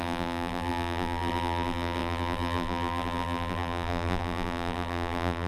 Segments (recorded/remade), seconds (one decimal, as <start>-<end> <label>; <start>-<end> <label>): 0.0-5.5 remade